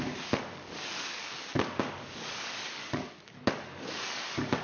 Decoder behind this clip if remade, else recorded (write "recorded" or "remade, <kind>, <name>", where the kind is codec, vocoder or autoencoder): remade, codec, DAC